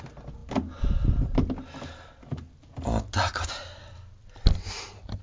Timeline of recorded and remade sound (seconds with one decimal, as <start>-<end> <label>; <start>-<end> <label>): 0.0-5.2 recorded

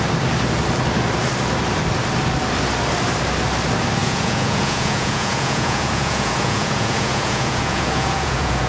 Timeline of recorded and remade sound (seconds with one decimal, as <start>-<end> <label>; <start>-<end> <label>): 0.0-4.0 recorded; 4.0-8.7 remade

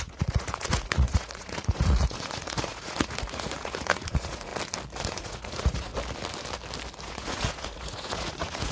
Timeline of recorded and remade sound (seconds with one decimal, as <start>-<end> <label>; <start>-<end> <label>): 0.0-4.5 remade; 4.5-5.0 recorded; 5.0-5.9 remade; 5.9-7.0 recorded; 7.0-8.7 remade

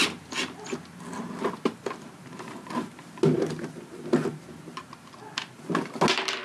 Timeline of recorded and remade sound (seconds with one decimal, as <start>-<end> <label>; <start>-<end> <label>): 0.0-6.4 recorded

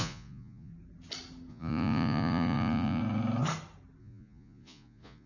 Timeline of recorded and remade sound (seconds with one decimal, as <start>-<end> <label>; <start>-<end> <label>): 0.0-0.7 remade; 0.7-1.5 recorded; 1.5-3.0 remade; 3.0-4.0 recorded; 4.0-5.3 remade

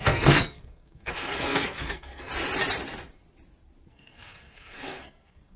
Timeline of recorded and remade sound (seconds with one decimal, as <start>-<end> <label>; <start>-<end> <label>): 0.0-2.3 remade; 2.3-3.9 recorded; 3.9-5.6 remade

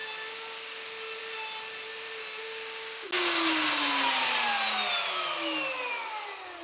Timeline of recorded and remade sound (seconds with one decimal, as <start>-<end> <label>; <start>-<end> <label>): 0.0-6.6 recorded